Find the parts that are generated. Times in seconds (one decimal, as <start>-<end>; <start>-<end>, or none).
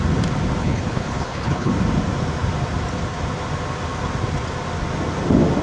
0.6-1.7